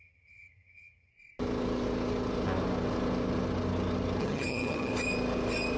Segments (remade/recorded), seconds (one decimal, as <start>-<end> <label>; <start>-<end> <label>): 0.0-1.1 remade; 1.1-4.2 recorded; 4.2-4.9 remade; 4.9-5.8 recorded